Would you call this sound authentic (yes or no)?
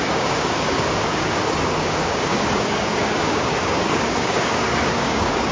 no